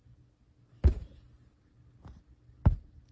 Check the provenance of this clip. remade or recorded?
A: recorded